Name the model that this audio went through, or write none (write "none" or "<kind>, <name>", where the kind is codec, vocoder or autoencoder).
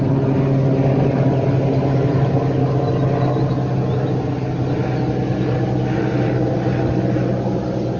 none